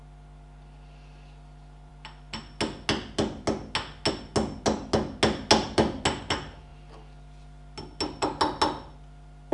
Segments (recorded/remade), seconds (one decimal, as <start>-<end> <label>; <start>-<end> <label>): 0.0-9.5 recorded